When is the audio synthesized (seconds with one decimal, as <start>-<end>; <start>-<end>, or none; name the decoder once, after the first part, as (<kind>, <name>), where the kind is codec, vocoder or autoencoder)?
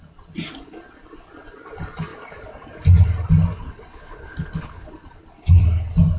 3.9-4.9 (codec, HILCodec)